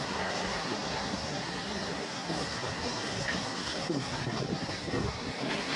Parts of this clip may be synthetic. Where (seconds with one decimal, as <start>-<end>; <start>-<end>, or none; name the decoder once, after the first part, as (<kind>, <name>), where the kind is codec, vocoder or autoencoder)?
0.0-5.8 (codec, SNAC)